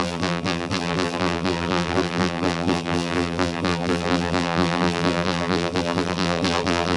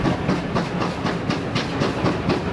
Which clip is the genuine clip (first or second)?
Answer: second